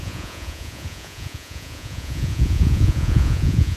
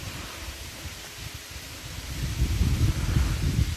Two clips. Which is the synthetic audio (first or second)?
first